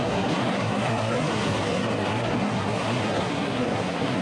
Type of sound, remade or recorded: remade